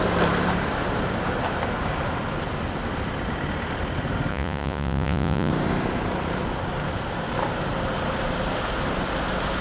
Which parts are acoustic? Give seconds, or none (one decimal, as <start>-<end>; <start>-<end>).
0.0-4.3; 5.5-9.6